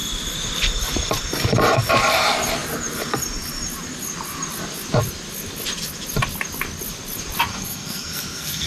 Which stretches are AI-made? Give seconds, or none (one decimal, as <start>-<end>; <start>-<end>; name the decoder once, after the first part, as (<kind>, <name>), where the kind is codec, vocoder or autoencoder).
7.5-8.7 (codec, SNAC)